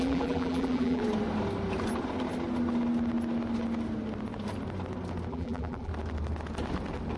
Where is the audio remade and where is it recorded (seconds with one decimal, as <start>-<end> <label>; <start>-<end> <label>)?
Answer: 0.0-1.0 remade; 1.0-5.3 recorded; 5.3-5.9 remade; 5.9-7.2 recorded